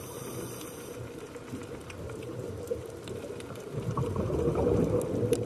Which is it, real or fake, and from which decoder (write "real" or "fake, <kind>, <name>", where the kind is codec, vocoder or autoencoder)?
real